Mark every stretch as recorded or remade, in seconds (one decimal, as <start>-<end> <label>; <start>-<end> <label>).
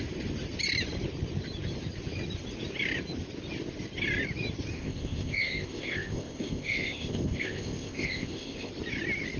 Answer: 0.0-4.7 recorded; 4.7-8.7 remade; 8.7-9.4 recorded